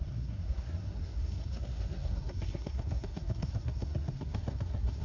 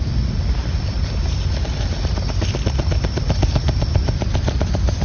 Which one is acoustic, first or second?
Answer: second